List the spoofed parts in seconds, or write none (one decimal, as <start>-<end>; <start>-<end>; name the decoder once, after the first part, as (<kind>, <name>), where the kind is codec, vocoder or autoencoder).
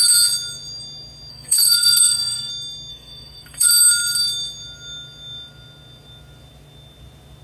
1.3-2.5 (codec, SNAC); 2.9-3.7